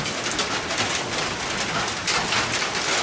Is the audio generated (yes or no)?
no